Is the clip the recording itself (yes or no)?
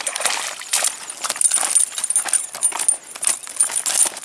yes